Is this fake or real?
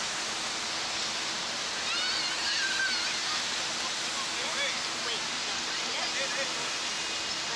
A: real